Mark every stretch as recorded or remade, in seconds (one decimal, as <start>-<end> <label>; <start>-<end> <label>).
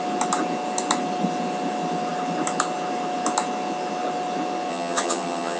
0.0-4.7 recorded; 4.7-5.6 remade